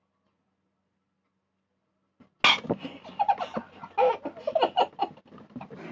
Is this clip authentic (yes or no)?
yes